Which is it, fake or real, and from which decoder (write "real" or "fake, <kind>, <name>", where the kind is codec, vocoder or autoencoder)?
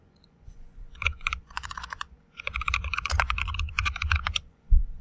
fake, vocoder, Vocos